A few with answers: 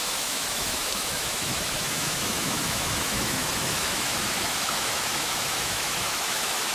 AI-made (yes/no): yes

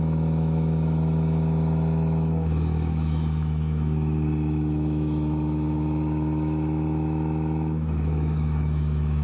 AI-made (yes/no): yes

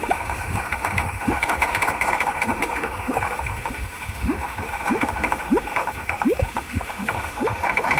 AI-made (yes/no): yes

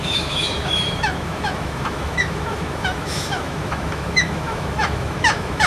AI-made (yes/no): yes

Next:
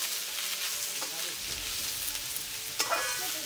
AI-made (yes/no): no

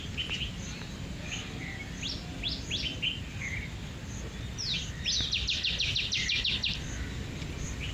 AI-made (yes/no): no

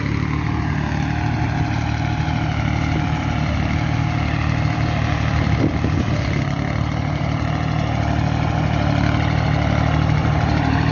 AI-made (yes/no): no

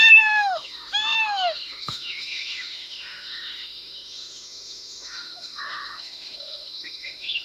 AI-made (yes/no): yes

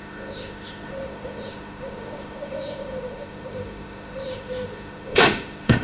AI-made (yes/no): yes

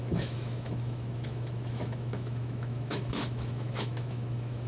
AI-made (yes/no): yes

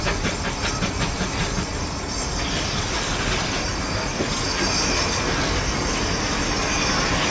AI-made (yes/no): no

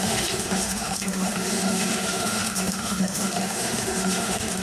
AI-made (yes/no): yes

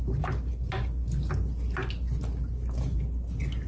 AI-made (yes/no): no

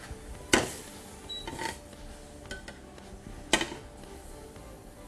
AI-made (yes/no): no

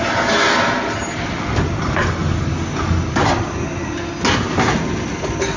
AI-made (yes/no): no